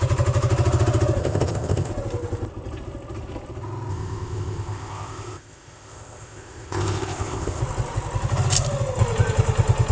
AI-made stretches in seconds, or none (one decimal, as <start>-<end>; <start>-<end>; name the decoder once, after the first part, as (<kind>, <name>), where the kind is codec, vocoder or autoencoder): 1.2-1.9 (codec, ZipCodec); 3.9-7.6